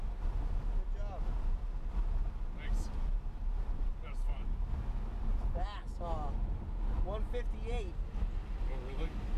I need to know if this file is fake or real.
real